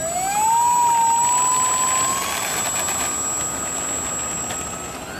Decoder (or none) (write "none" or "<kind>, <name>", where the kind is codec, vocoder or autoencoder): none